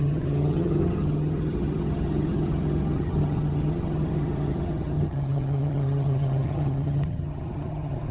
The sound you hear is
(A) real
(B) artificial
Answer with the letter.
B